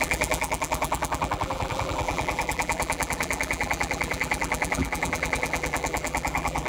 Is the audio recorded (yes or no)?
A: no